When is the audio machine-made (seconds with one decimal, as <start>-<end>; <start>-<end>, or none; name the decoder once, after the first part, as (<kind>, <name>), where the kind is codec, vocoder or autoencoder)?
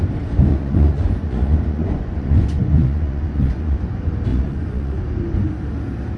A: 0.5-3.8 (vocoder, Vocos); 4.3-5.0